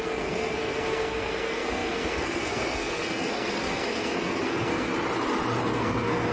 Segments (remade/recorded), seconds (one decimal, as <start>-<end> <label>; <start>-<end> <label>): 0.0-4.9 remade; 4.9-5.6 recorded; 5.6-6.3 remade